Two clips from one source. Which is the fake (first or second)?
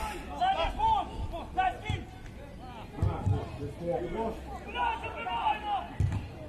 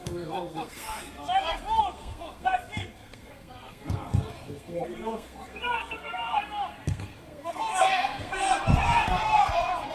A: second